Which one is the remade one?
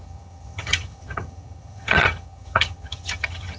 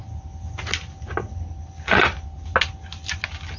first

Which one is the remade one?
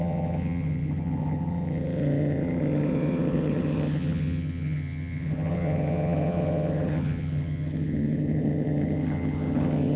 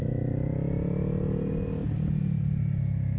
first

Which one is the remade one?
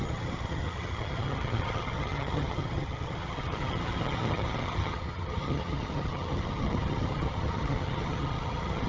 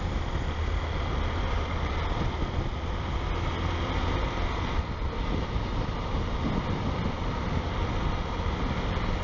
first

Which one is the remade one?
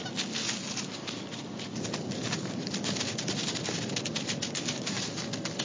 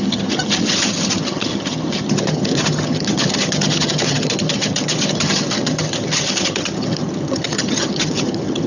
second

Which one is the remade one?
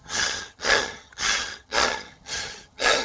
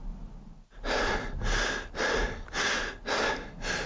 first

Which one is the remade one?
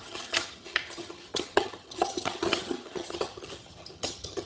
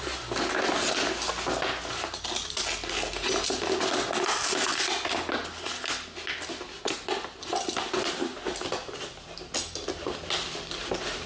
first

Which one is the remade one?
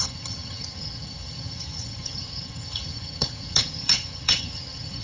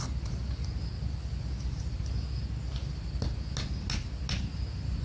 first